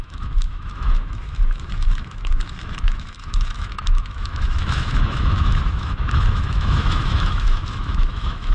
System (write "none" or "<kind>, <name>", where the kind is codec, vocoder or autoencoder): autoencoder, DAC-VAE